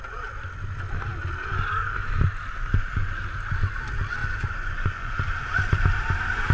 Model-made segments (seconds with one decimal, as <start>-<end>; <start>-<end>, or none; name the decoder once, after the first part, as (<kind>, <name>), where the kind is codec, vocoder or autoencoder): 4.2-5.1 (vocoder, Vocos)